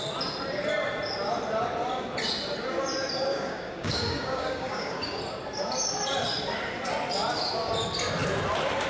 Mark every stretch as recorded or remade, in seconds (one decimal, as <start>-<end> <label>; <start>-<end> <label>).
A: 0.0-3.3 recorded; 3.3-5.2 remade; 5.2-8.9 recorded